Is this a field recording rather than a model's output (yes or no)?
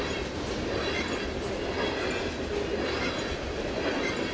yes